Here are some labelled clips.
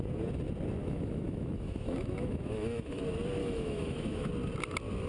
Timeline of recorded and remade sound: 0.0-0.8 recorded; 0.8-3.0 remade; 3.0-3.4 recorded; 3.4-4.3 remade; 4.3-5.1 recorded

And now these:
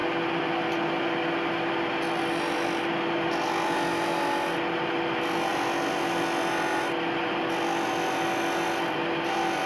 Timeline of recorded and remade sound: 0.0-9.7 recorded

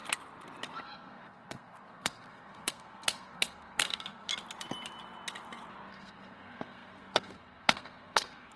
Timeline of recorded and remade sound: 0.0-0.8 recorded; 0.8-4.3 remade; 4.3-5.9 recorded; 5.9-8.6 remade

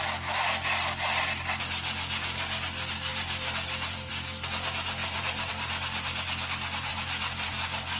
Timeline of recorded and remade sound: 0.0-3.1 recorded; 3.1-4.1 remade; 4.1-5.0 recorded; 5.0-5.5 remade; 5.5-6.9 recorded; 6.9-7.5 remade; 7.5-8.0 recorded